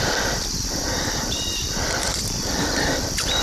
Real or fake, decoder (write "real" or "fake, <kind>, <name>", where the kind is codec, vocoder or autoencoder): fake, vocoder, BigVGAN v2